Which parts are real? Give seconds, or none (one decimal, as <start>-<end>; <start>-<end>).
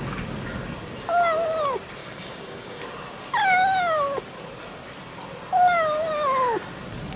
0.0-2.0; 2.8-7.2